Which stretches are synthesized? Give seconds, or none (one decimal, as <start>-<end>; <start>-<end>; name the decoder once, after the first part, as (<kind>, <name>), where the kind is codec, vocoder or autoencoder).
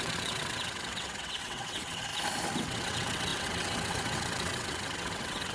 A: 0.0-2.1 (vocoder, WaveNeXt); 2.6-5.5